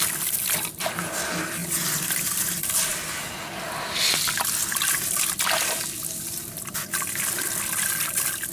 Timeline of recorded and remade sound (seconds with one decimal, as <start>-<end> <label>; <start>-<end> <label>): 0.0-8.5 recorded